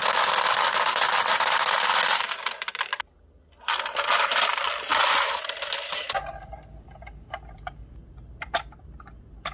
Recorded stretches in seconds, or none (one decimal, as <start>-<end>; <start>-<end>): 0.0-9.5

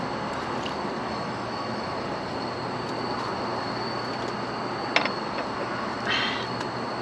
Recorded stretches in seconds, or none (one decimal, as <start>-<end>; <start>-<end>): 0.0-1.0; 1.9-7.0

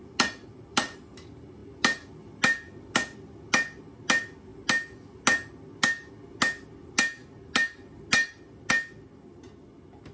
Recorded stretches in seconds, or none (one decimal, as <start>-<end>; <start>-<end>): 0.0-10.1

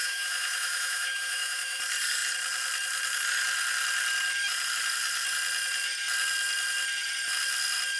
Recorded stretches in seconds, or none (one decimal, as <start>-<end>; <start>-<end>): 1.8-8.0

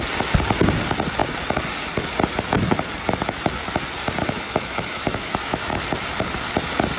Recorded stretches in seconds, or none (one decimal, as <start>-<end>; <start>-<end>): 0.0-4.2; 5.8-7.0

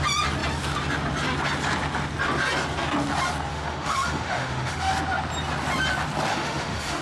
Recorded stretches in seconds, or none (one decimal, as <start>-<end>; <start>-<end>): 0.0-3.5; 4.9-6.3

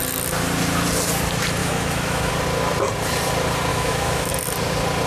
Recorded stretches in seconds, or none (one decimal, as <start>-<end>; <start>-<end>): 0.0-1.6; 2.3-3.7; 4.3-5.1